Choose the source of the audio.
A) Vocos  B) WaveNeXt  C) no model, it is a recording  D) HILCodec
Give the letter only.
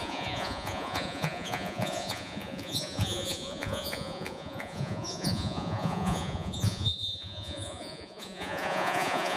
A